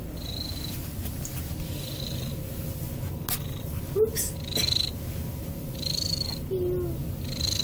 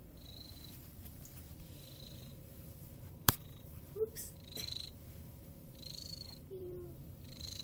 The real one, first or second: first